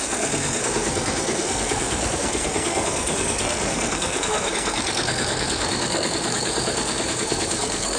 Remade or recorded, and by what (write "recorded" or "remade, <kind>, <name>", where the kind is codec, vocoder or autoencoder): remade, codec, SNAC